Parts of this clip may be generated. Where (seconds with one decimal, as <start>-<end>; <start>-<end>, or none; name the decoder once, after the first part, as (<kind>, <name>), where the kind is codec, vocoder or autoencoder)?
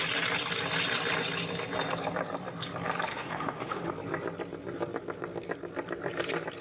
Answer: 3.1-3.9 (autoencoder, DAC-VAE)